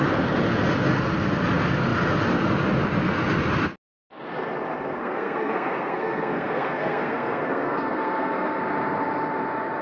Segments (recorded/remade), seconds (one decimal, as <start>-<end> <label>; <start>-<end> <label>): 0.0-5.0 recorded; 5.0-8.6 remade; 8.6-9.8 recorded